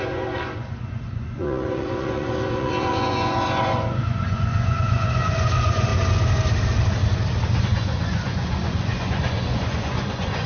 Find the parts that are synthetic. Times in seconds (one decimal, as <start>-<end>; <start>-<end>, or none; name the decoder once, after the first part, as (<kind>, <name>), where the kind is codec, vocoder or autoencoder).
0.0-5.9 (vocoder, Vocos); 7.6-10.5